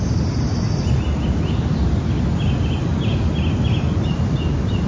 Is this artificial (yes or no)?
no